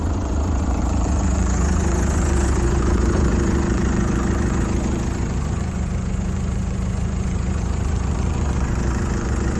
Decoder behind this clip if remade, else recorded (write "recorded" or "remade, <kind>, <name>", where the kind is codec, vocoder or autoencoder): remade, vocoder, Vocos